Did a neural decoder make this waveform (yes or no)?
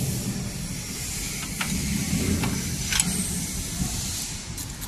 no